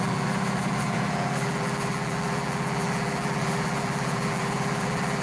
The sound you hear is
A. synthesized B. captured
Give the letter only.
A